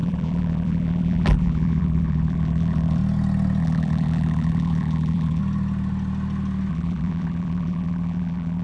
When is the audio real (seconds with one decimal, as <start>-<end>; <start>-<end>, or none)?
3.0-3.6; 5.4-6.7